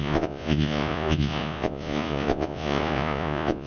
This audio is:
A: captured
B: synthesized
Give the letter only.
B